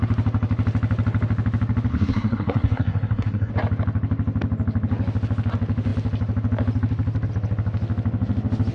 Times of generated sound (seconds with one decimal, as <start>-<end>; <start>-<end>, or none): 1.9-3.5